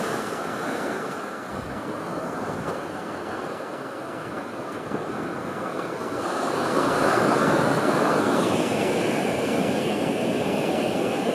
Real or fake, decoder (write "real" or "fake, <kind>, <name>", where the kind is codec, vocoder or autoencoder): fake, codec, SNAC